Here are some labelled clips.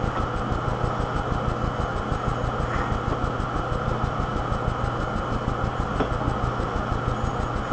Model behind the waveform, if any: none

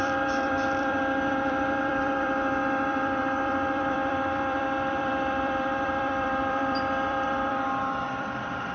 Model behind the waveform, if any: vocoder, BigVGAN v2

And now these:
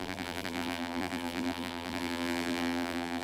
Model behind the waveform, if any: vocoder, BigVGAN v2